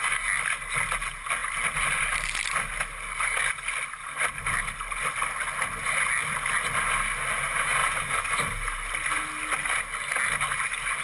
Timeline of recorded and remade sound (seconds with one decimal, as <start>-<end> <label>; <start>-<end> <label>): 0.0-7.8 recorded; 7.8-8.5 remade; 8.5-11.0 recorded